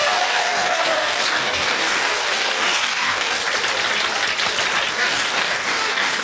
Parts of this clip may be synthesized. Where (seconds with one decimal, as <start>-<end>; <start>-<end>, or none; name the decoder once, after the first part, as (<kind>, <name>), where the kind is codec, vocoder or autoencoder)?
0.0-3.4 (codec, DAC); 4.9-6.2